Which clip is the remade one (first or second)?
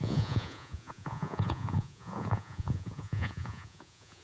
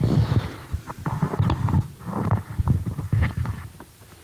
first